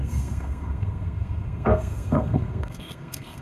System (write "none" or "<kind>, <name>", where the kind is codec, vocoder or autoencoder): codec, SNAC